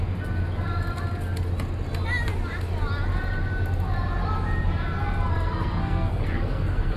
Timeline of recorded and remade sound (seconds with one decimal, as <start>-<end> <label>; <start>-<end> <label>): 0.0-5.3 recorded; 5.3-7.0 remade